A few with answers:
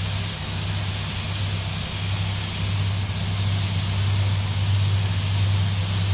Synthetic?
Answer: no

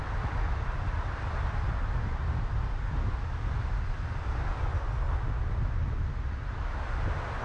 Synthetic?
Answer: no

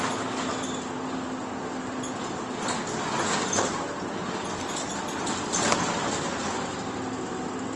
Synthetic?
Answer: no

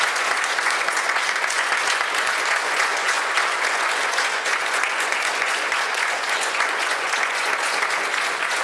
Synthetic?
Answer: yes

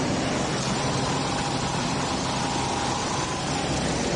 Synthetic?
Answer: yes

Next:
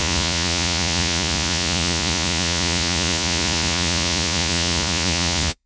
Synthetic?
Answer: yes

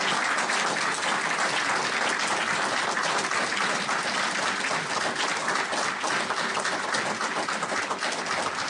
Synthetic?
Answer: no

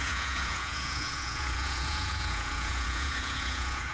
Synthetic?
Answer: yes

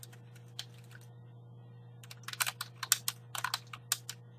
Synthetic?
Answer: no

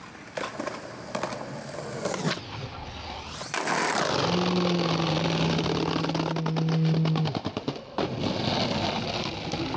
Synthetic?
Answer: no